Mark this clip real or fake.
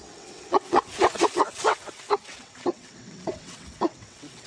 fake